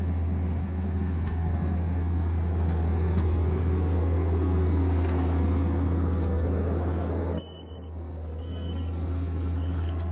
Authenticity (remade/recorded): remade